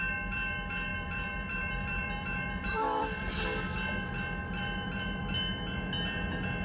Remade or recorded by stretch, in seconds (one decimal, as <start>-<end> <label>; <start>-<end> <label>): 0.0-0.9 recorded; 0.9-3.3 remade; 3.3-4.4 recorded; 4.4-5.2 remade; 5.2-6.6 recorded